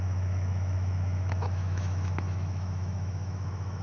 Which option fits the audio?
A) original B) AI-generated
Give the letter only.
B